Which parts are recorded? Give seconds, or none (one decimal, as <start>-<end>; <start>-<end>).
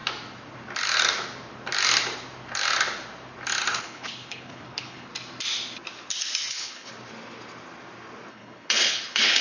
0.0-3.8; 5.1-6.5; 6.9-8.3